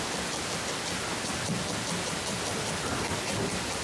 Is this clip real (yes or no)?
yes